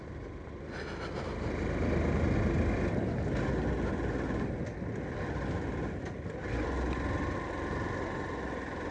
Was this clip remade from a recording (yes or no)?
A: no